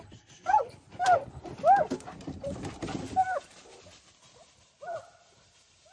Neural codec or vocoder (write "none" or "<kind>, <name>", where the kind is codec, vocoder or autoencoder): none